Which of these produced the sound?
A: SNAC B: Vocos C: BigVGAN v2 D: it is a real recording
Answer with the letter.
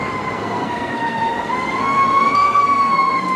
A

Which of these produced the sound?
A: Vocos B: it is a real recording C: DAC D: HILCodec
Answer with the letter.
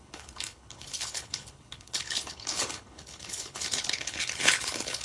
D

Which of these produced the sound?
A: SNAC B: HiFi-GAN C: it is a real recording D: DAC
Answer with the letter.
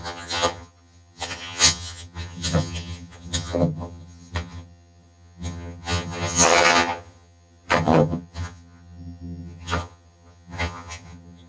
B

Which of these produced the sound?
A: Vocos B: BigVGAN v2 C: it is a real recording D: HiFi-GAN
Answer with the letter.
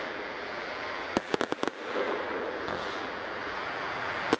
B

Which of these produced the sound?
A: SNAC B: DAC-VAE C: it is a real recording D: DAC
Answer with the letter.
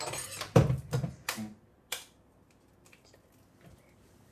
C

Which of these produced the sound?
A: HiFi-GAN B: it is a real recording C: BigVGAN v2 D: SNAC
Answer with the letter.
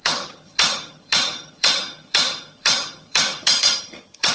A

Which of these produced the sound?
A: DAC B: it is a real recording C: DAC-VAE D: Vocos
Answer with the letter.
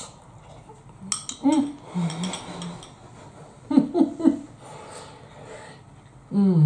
B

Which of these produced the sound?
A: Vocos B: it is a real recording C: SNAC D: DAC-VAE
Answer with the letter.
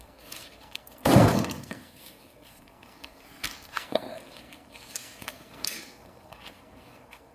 C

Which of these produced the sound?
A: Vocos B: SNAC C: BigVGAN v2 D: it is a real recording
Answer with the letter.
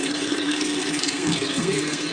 B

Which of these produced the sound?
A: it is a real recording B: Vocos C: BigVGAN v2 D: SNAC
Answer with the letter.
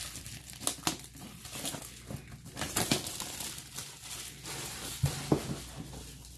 A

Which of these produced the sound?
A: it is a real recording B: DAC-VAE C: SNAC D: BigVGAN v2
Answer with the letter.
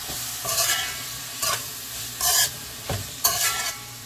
D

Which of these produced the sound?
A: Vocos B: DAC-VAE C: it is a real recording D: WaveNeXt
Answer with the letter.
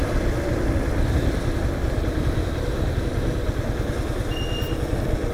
C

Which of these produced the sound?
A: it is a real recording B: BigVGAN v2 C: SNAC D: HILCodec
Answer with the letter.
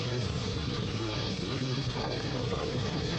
C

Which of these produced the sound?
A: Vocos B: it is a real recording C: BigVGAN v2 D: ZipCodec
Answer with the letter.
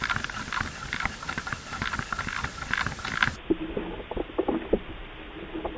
B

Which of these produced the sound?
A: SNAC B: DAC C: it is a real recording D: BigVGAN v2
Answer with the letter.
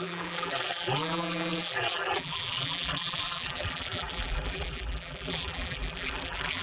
D